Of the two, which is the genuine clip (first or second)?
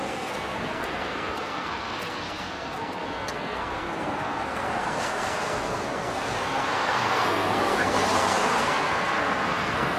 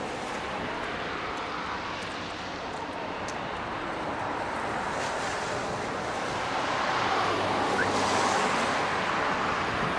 second